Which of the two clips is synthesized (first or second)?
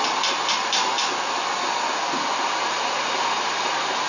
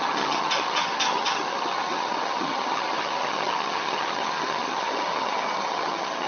second